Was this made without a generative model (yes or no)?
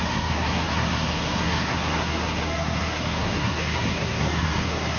no